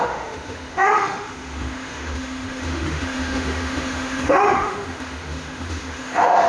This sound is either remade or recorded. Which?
remade